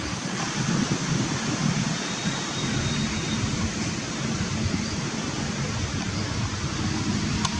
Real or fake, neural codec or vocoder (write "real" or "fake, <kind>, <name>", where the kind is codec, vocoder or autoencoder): real